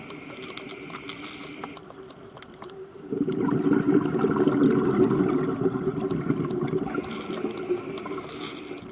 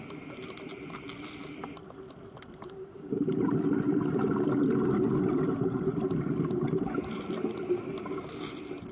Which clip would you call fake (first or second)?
second